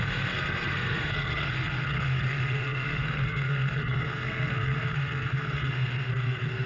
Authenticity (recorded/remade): remade